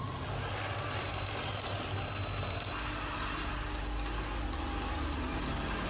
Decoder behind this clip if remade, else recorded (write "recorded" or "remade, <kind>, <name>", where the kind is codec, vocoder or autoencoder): recorded